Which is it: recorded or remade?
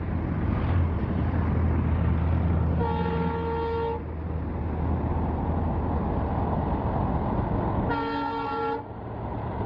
recorded